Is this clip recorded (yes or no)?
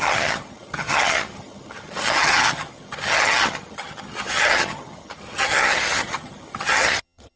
no